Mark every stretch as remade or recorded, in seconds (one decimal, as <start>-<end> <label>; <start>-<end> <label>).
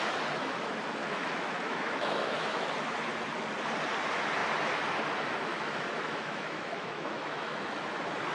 0.0-1.0 recorded; 1.0-2.7 remade; 2.7-5.5 recorded; 5.5-7.8 remade; 7.8-8.3 recorded